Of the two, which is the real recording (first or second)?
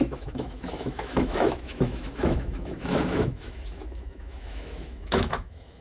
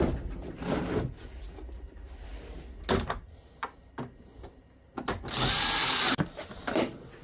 second